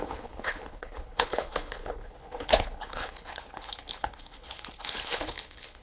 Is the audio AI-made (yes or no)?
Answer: yes